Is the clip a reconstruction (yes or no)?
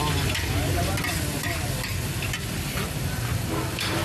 no